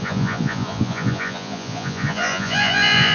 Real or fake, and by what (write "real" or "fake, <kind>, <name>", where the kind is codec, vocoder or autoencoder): fake, vocoder, Vocos